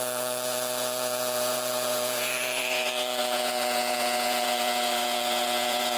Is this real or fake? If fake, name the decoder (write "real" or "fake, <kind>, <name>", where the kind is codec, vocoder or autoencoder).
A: fake, vocoder, Vocos